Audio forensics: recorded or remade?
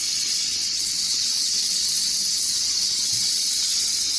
remade